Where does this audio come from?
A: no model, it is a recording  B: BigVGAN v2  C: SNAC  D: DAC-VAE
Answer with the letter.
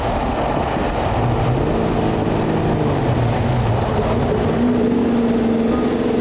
A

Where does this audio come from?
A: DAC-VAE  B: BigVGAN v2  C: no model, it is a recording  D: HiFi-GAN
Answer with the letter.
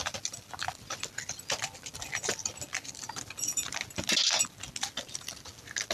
C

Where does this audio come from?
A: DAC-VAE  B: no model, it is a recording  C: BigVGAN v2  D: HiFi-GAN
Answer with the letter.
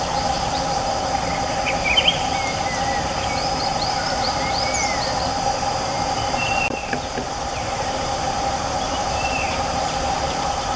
C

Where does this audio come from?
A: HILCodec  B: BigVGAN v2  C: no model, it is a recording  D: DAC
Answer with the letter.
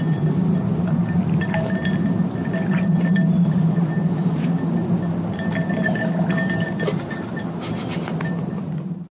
C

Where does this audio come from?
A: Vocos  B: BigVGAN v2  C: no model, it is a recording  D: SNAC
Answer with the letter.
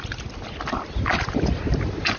C